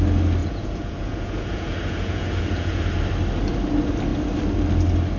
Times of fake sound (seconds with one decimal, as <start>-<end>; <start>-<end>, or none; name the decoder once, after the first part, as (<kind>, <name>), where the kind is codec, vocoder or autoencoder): 0.4-2.8 (vocoder, Vocos)